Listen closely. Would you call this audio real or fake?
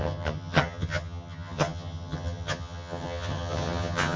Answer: fake